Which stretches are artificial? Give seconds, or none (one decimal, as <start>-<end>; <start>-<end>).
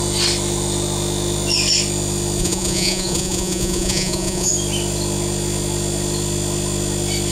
2.4-4.5